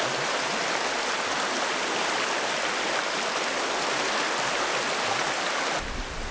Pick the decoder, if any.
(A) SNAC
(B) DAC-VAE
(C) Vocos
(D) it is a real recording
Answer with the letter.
D